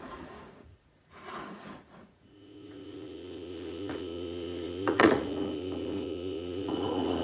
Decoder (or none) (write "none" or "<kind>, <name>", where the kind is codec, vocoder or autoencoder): vocoder, Vocos